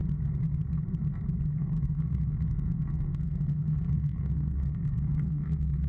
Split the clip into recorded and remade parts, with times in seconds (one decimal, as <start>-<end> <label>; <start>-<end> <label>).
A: 0.0-1.6 recorded; 1.6-5.9 remade